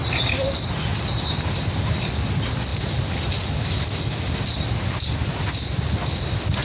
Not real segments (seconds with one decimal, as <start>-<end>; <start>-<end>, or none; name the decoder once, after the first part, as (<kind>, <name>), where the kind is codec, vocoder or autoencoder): none

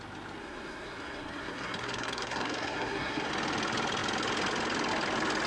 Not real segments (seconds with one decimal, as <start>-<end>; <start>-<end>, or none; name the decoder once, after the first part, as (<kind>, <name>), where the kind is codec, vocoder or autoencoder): 0.4-3.3 (codec, SNAC)

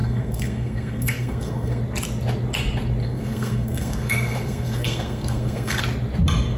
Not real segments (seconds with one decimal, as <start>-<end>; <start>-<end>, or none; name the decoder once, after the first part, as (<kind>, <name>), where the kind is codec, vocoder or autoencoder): 0.0-1.8 (codec, SNAC); 3.0-5.8

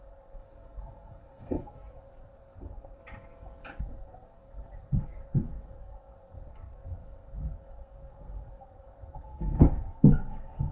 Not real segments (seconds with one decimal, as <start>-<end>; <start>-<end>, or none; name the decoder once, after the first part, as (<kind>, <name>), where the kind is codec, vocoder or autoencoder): 0.0-3.0 (codec, SNAC); 3.8-10.7

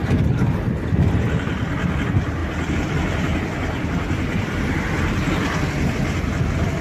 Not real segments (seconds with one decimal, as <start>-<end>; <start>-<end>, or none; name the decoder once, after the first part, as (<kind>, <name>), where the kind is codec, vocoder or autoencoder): none